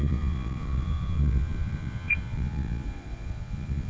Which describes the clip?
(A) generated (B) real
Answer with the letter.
A